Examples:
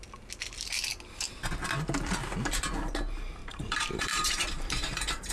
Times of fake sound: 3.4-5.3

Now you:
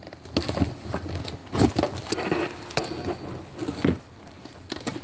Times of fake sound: none

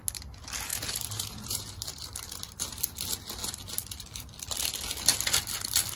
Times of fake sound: 0.7-2.8

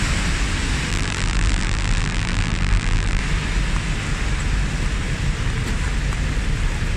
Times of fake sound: 0.9-3.2

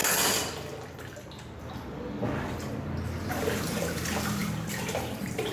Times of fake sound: 3.3-5.5

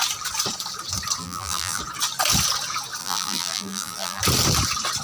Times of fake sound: 1.2-1.8; 3.0-4.2

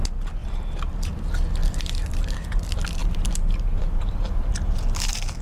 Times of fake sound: 3.0-4.5

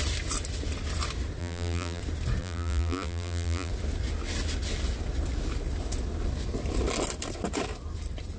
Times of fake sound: 1.4-2.0; 2.4-3.7